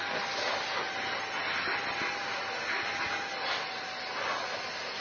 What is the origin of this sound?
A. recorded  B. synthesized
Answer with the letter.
A